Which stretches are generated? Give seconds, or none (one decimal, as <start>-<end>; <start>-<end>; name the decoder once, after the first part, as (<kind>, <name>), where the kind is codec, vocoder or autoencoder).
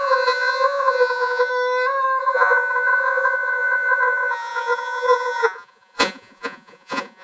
0.0-1.5 (vocoder, Vocos); 2.2-7.2